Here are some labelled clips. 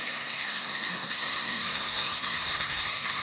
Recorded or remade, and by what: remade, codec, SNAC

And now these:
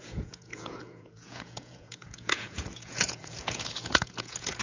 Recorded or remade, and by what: remade, vocoder, Vocos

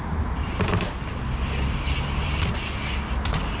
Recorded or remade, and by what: recorded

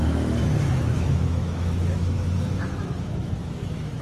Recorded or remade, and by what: remade, autoencoder, DAC-VAE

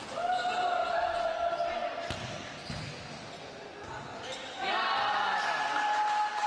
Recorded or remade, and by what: recorded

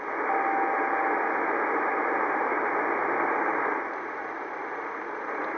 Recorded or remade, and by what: recorded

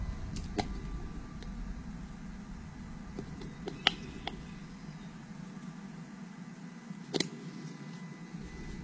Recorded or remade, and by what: recorded